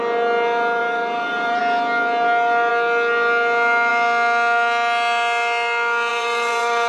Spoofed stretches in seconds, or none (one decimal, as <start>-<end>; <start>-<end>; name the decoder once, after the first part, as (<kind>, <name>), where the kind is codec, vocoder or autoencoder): 0.8-1.6 (vocoder, BigVGAN v2); 6.1-6.9